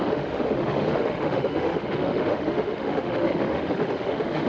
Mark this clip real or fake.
fake